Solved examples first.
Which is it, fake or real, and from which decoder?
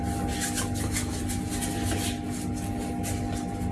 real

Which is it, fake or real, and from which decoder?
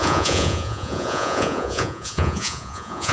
fake, vocoder, Vocos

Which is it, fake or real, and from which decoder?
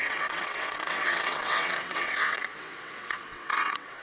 fake, vocoder, WaveNeXt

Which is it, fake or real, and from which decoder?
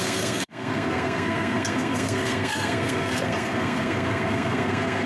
fake, codec, SNAC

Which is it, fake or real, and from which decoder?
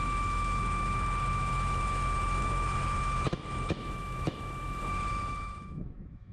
fake, autoencoder, DAC-VAE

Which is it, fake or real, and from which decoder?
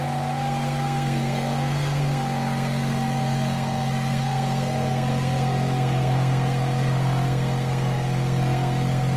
fake, codec, SNAC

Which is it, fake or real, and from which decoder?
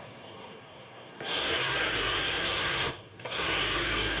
fake, codec, SNAC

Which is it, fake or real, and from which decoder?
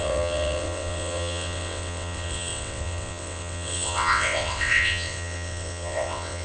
fake, vocoder, WaveNeXt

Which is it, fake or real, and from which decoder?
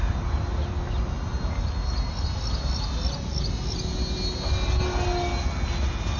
real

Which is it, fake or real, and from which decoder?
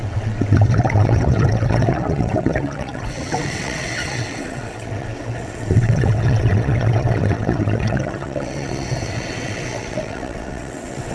fake, vocoder, WaveNeXt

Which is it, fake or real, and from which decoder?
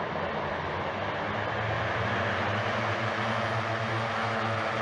real